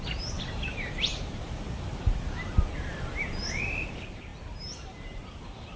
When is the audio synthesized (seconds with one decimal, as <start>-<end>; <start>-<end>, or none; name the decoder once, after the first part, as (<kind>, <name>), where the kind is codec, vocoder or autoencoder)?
0.0-5.8 (vocoder, BigVGAN v2)